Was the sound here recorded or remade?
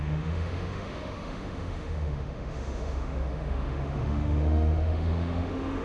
remade